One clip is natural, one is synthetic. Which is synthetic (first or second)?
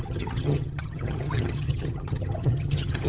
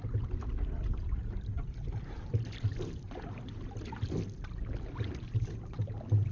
first